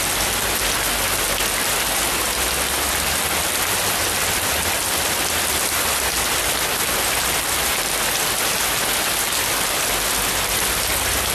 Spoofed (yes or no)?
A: no